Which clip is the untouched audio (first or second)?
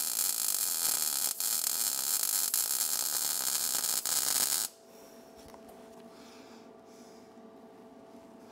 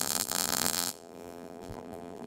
first